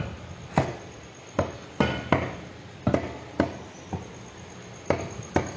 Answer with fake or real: real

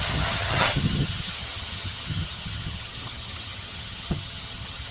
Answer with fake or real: fake